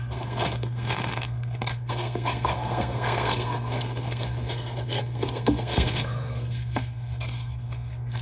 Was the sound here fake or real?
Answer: fake